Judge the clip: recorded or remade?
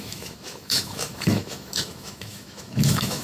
remade